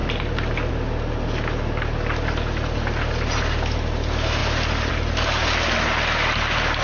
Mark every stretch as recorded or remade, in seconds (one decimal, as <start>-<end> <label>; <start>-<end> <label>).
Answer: 0.0-6.8 recorded